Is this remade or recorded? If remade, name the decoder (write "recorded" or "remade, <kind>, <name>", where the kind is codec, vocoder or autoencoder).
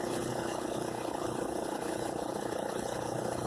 remade, codec, HILCodec